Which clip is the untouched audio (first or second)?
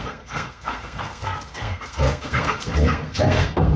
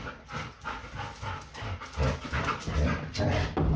second